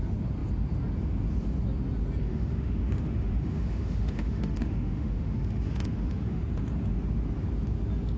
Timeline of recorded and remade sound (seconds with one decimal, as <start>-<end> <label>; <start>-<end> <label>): 0.0-2.2 recorded; 2.2-6.4 remade; 6.4-8.2 recorded